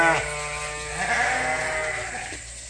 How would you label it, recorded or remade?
recorded